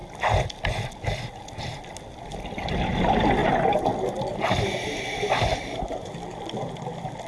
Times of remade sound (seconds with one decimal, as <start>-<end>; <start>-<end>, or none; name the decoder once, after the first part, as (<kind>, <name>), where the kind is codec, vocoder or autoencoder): 3.4-3.9 (vocoder, BigVGAN v2); 5.5-6.1